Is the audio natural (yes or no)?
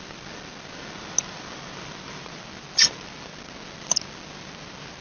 yes